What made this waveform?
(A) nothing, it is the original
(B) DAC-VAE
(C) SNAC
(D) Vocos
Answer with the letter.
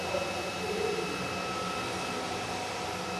A